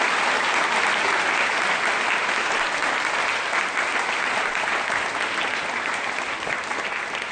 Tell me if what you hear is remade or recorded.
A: recorded